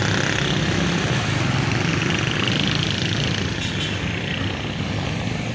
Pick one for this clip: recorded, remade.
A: recorded